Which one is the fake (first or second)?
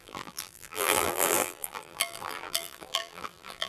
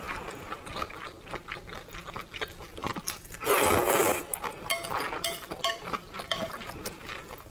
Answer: first